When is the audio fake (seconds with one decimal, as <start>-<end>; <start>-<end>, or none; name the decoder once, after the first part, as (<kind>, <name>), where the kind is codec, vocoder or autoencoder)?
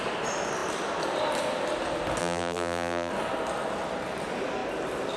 2.2-3.1 (vocoder, BigVGAN v2)